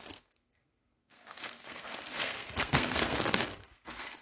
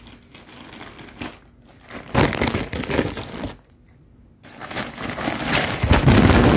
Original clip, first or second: second